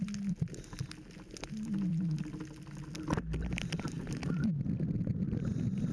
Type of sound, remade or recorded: recorded